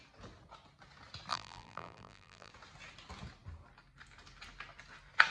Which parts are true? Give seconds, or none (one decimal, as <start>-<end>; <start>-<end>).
0.0-1.3; 2.5-5.3